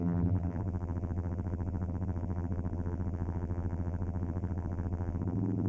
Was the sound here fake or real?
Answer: fake